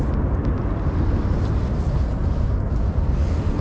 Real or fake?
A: real